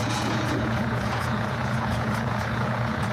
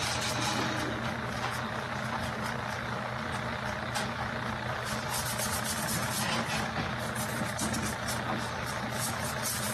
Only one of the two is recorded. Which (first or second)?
second